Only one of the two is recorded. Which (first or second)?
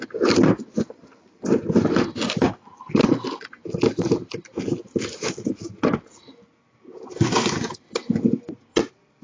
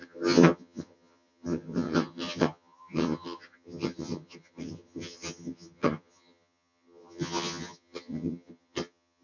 first